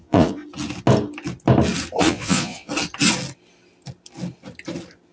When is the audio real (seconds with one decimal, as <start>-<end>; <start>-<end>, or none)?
0.4-2.0; 2.7-5.1